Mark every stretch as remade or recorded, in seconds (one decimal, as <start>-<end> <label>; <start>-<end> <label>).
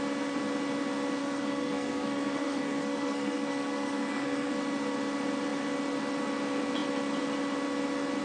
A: 0.0-1.2 recorded; 1.2-4.5 remade; 4.5-8.2 recorded